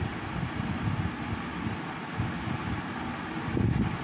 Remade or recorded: recorded